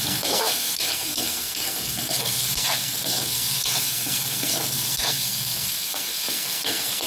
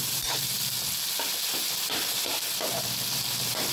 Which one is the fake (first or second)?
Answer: first